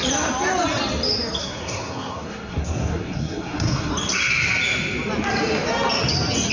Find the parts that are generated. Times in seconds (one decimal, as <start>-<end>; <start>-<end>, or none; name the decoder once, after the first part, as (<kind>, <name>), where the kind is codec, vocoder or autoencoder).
1.4-3.9 (codec, SNAC)